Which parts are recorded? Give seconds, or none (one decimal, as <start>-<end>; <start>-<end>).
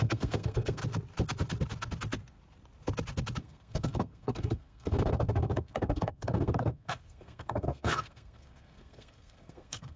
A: 0.8-3.4